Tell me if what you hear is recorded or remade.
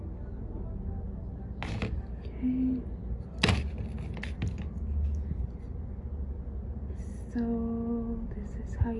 recorded